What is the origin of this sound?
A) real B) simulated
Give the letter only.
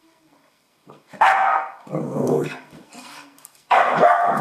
B